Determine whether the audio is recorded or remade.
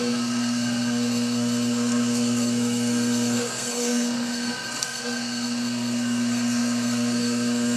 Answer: remade